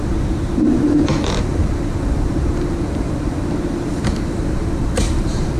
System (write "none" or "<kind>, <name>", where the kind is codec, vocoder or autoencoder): vocoder, BigVGAN v2